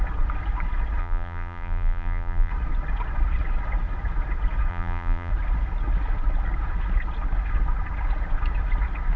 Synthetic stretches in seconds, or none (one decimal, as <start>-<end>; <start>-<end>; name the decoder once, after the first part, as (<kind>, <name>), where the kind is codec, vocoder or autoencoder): 1.0-2.5 (vocoder, BigVGAN v2); 4.7-5.3